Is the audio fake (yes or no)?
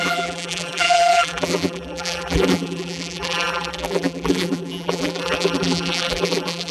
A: yes